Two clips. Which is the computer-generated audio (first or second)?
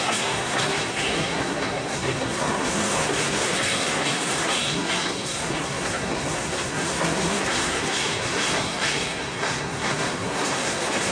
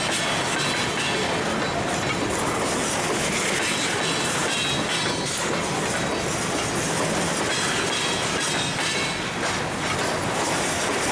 first